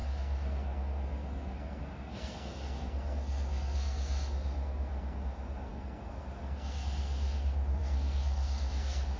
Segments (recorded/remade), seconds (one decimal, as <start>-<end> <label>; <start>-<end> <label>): 0.0-9.2 remade